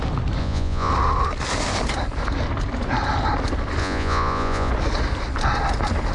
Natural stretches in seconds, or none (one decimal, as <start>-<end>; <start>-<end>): 0.0-0.4; 0.9-3.8; 4.7-6.1